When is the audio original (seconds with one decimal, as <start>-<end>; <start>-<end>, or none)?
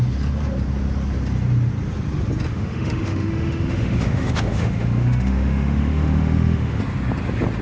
0.0-2.5; 6.8-7.6